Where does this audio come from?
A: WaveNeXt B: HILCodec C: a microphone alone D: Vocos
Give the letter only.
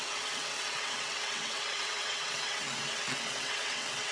A